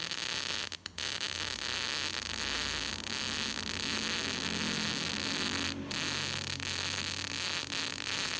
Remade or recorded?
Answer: recorded